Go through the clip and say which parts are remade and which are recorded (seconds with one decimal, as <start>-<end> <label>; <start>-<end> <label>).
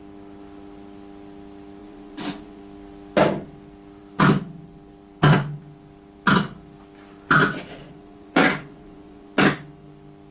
0.0-1.8 recorded; 1.8-2.6 remade; 2.6-7.4 recorded; 7.4-9.3 remade; 9.3-10.3 recorded